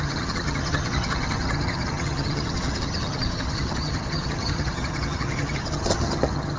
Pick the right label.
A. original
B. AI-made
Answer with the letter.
B